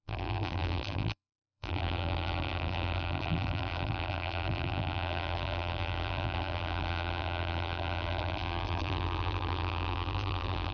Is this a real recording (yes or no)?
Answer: no